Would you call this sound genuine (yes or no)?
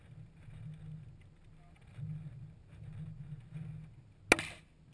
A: yes